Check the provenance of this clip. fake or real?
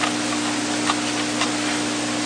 real